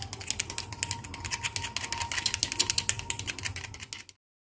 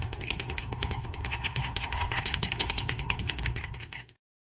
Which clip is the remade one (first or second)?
second